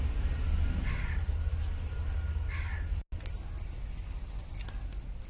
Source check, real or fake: real